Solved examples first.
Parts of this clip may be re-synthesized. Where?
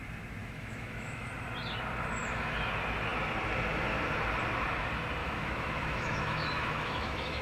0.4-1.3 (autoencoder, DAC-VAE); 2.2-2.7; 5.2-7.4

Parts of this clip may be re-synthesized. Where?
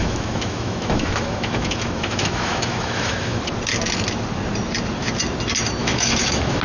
0.0-3.4 (autoencoder, DAC-VAE); 5.8-6.6